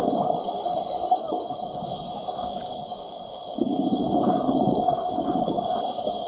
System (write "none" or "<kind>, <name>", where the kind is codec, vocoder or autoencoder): codec, DAC